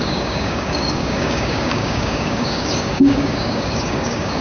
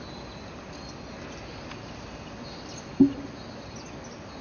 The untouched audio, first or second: second